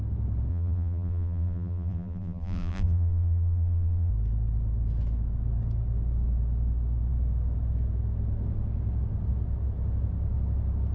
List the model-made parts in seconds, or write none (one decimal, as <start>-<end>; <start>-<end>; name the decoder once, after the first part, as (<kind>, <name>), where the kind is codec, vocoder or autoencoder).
0.5-4.1 (vocoder, BigVGAN v2)